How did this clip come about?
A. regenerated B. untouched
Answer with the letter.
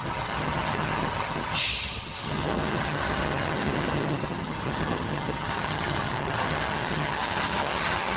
A